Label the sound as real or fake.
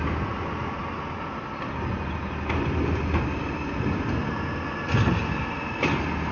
real